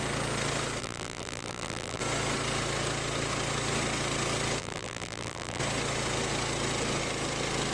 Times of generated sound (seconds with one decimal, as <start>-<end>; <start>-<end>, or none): 0.8-2.0; 4.6-5.6